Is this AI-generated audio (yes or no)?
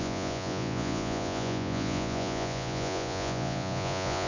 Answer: yes